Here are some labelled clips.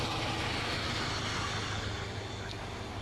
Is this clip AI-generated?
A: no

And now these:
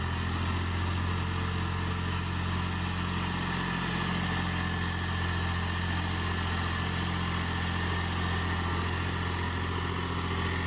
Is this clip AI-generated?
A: no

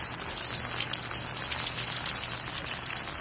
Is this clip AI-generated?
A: no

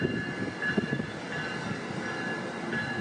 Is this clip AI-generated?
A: no